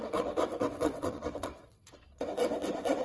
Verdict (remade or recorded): remade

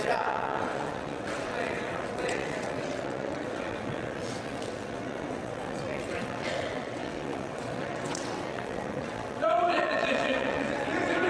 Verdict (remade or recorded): remade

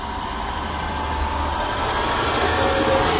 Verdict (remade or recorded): recorded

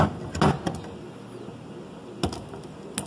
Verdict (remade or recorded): recorded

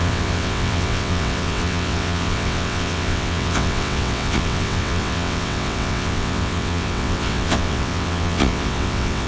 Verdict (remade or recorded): remade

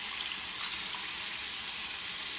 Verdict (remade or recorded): recorded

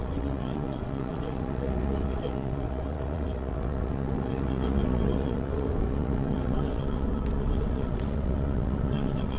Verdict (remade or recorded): remade